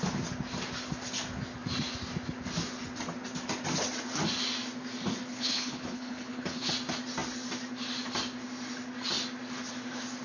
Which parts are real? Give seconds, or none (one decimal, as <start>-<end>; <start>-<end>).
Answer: 0.0-5.3; 6.7-10.2